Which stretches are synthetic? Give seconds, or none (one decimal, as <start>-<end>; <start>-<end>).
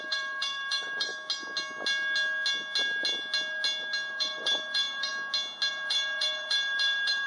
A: 0.0-1.1; 4.1-5.1; 5.7-7.3